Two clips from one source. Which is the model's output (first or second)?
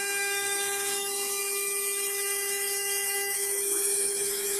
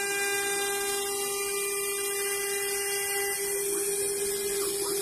first